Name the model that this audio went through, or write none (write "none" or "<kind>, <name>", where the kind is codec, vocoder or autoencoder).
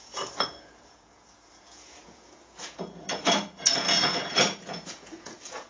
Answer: vocoder, Vocos